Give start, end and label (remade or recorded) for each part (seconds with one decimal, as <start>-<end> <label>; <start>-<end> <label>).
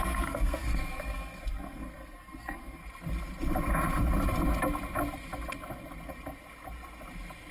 0.0-2.8 remade; 2.8-7.5 recorded